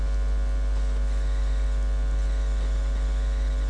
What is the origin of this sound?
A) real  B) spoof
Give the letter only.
A